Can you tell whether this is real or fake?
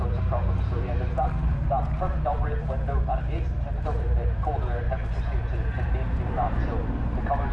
fake